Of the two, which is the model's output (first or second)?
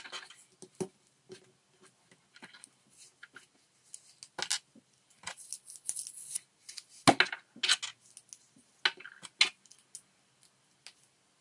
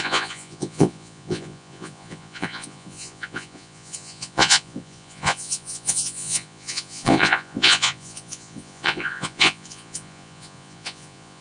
second